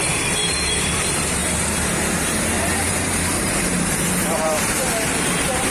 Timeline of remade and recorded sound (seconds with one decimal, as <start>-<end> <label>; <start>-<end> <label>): 0.0-1.4 remade; 1.4-2.9 recorded; 2.9-5.7 remade